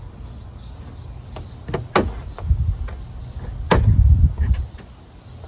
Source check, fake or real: real